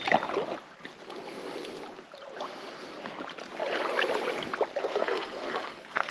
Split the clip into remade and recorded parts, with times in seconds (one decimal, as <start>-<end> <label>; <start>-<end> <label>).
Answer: 0.0-4.8 recorded; 4.8-6.1 remade